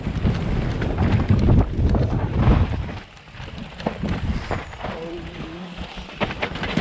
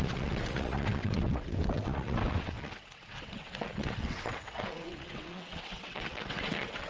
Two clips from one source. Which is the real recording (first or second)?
first